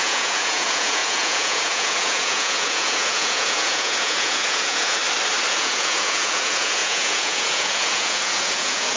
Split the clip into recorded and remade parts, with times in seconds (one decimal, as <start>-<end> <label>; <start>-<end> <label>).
0.0-5.0 remade; 5.0-5.5 recorded; 5.5-9.0 remade

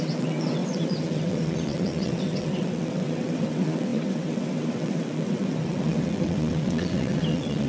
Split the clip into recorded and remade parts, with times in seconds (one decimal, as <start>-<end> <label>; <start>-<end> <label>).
0.0-7.7 remade